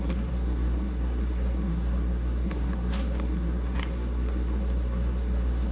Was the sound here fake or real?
fake